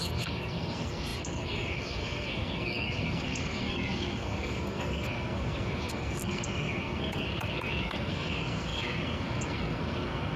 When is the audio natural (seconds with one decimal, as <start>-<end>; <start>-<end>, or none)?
none